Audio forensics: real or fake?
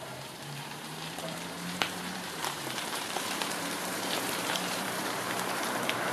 fake